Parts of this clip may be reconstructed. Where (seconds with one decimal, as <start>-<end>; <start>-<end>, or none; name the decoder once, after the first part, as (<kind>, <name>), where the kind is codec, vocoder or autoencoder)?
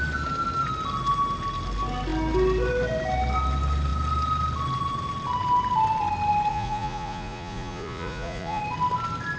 6.5-8.6 (vocoder, Vocos)